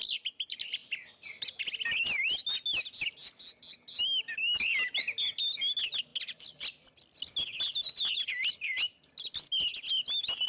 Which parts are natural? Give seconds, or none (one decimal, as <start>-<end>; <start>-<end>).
0.0-10.5